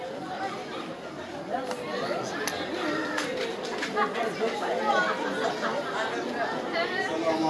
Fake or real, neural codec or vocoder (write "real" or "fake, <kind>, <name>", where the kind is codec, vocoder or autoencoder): real